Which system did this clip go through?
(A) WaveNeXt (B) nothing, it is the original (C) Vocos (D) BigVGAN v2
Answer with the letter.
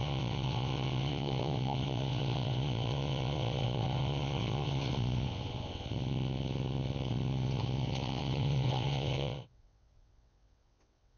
A